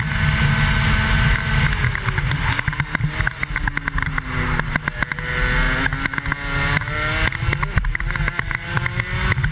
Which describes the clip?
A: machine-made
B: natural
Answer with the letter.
B